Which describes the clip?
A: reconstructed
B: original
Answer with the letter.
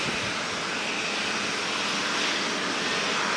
B